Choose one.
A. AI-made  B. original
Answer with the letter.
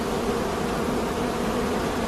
B